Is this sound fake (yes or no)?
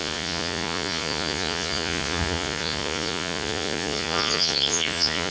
yes